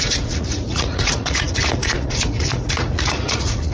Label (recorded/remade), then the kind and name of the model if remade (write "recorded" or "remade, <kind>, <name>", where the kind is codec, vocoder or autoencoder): remade, vocoder, Vocos